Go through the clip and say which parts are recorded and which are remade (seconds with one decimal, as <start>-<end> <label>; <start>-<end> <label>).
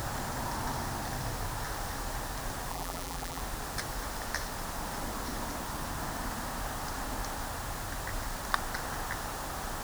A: 0.0-2.7 recorded; 2.7-3.4 remade; 3.4-9.8 recorded